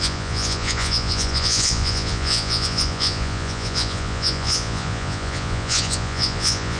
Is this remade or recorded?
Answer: remade